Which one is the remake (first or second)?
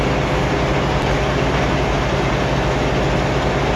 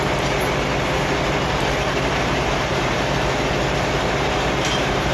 second